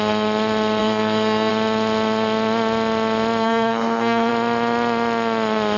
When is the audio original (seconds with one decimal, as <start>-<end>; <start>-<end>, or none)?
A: 0.0-0.8; 1.5-3.4; 4.3-5.8